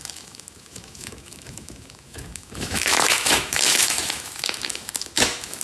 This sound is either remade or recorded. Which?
remade